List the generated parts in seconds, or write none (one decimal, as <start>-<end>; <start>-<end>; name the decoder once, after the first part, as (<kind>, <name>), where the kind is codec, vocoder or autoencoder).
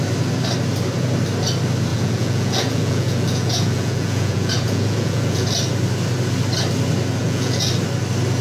1.9-5.5 (vocoder, Vocos); 7.2-7.7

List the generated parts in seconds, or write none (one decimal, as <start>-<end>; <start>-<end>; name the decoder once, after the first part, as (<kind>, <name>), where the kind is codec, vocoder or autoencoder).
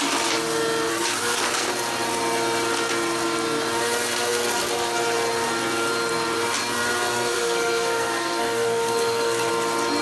0.9-1.7 (codec, SNAC); 7.1-9.5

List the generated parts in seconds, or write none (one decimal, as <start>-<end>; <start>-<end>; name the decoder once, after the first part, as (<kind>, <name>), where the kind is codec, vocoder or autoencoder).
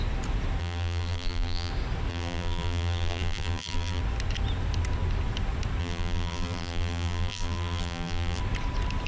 0.6-1.7 (vocoder, BigVGAN v2); 2.1-4.0; 5.8-8.4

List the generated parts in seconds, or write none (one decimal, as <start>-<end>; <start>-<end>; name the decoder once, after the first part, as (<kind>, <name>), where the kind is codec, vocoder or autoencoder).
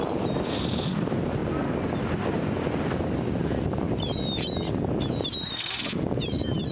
none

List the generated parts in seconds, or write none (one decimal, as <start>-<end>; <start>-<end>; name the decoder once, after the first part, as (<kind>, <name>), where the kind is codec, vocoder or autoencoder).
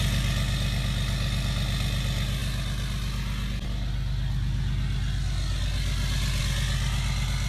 none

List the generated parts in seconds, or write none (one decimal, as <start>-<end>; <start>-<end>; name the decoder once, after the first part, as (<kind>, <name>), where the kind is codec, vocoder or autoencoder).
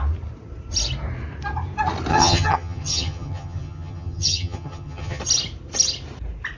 2.1-5.2 (vocoder, HiFi-GAN)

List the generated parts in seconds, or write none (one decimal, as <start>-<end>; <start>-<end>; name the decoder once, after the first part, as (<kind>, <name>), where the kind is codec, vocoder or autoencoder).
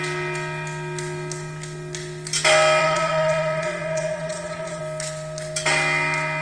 2.8-4.8 (vocoder, Vocos)